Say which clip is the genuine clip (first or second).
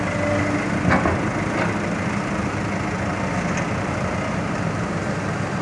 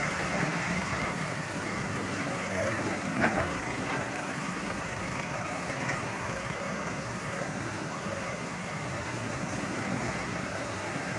first